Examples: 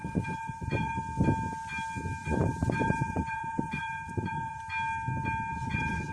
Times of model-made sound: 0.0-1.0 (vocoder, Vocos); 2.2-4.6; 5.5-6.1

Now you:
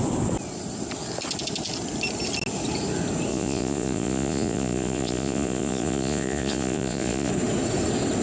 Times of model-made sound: 3.3-7.3 (vocoder, Vocos)

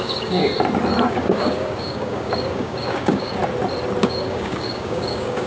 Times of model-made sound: 0.0-0.4 (codec, DAC); 1.1-3.4; 4.0-5.5

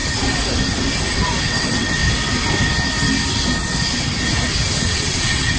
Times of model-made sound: 1.4-2.0 (vocoder, WaveNeXt); 4.8-5.6